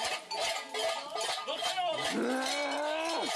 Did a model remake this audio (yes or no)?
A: no